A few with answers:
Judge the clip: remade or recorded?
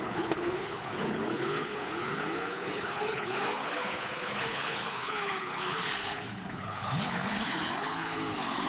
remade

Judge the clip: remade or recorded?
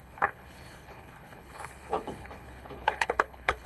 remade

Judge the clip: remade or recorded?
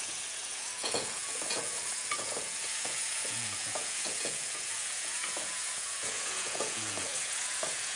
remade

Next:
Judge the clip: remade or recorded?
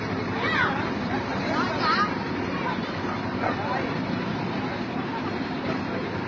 remade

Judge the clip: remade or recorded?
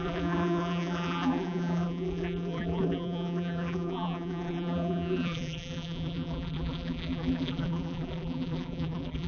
remade